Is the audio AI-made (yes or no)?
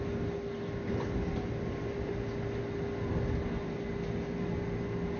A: no